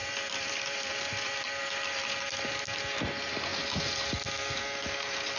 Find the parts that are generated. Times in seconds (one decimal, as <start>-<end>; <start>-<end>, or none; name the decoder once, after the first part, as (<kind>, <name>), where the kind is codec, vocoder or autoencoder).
0.0-1.6 (vocoder, BigVGAN v2)